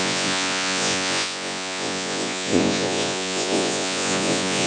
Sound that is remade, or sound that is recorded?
remade